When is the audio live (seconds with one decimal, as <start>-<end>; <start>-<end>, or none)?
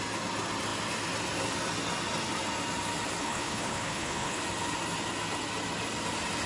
0.0-3.2; 4.4-6.5